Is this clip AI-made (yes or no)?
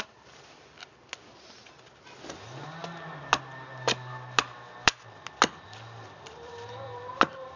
no